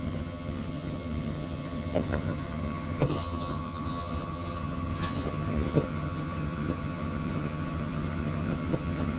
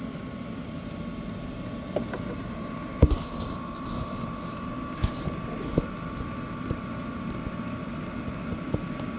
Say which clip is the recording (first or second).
second